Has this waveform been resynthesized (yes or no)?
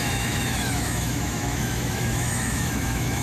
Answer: yes